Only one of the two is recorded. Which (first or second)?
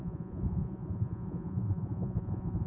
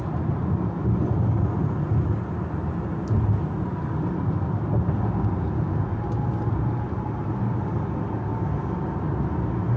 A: second